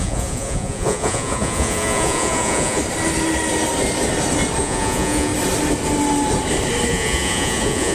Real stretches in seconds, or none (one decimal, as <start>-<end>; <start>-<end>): 2.8-4.6; 5.3-6.9

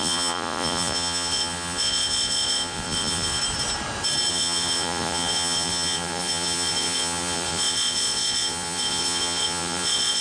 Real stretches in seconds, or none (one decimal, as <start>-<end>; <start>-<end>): 3.4-4.3

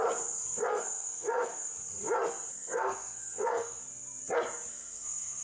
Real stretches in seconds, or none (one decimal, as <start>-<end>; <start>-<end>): 0.0-0.6; 1.7-2.5; 3.8-4.7

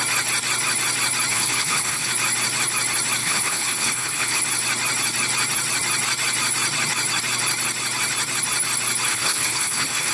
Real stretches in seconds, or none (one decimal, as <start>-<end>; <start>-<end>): 0.0-1.3; 2.1-3.2; 4.4-9.1

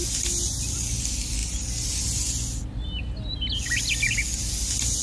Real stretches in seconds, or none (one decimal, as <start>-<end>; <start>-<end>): 0.0-5.0

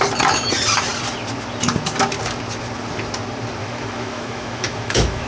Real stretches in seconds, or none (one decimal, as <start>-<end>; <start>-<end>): 0.0-3.6

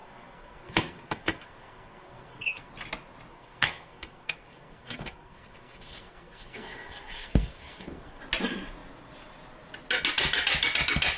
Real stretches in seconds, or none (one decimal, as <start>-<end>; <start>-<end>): 2.7-3.3; 8.2-11.2